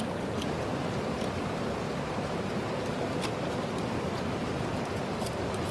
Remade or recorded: recorded